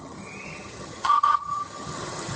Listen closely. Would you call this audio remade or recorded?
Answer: remade